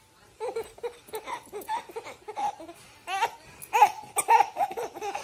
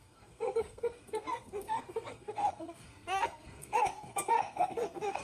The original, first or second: first